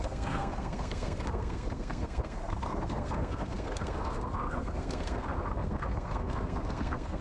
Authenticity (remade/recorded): remade